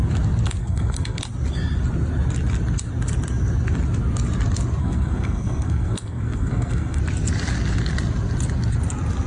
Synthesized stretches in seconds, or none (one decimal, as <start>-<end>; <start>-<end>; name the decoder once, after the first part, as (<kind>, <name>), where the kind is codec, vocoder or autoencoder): 0.6-1.2 (codec, SNAC); 4.8-7.0